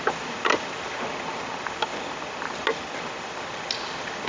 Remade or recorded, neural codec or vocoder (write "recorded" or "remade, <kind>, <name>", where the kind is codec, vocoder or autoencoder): recorded